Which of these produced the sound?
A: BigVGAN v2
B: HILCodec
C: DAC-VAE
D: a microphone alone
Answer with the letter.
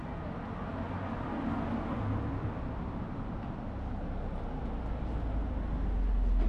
D